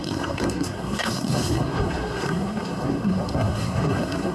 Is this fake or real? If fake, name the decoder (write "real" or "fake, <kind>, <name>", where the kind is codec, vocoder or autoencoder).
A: fake, codec, SNAC